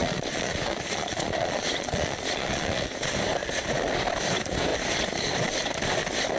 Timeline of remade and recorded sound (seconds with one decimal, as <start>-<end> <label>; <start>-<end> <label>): 0.0-3.1 remade; 3.1-6.4 recorded